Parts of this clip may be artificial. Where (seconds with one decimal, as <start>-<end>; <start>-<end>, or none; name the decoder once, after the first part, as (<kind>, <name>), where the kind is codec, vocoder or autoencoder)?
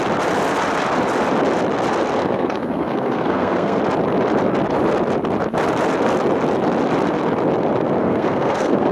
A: 2.2-3.8 (codec, SNAC); 8.0-8.9